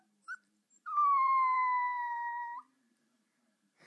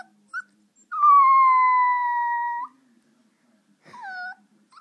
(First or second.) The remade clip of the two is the first